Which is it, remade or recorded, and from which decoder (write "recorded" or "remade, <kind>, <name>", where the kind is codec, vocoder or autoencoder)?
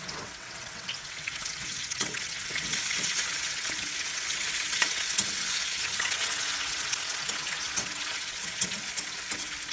remade, vocoder, WaveNeXt